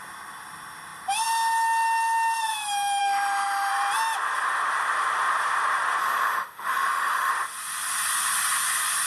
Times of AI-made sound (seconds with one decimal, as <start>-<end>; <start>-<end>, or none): 3.0-3.7; 6.0-7.3